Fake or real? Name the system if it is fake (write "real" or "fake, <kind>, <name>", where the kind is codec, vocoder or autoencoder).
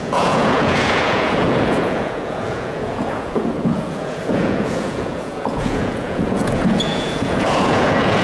fake, vocoder, Vocos